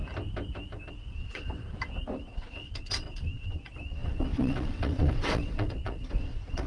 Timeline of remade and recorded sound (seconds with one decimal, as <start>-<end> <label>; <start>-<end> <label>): 0.0-0.9 recorded; 0.9-1.6 remade; 1.6-2.2 recorded; 2.2-6.7 remade